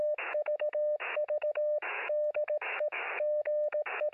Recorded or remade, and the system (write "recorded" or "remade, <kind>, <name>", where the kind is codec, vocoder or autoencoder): remade, autoencoder, DAC-VAE